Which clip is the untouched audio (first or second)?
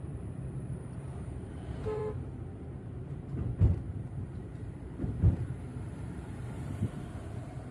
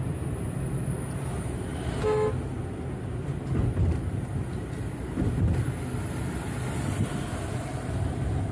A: second